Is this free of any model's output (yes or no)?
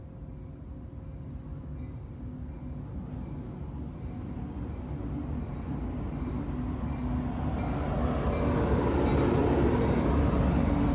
yes